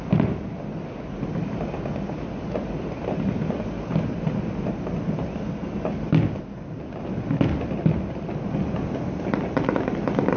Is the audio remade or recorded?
recorded